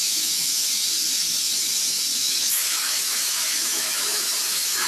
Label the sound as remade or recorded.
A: remade